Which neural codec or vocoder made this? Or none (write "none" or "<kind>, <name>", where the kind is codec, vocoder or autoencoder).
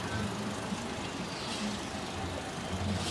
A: none